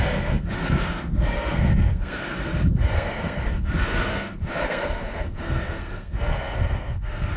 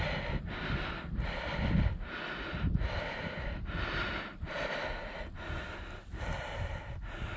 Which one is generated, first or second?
first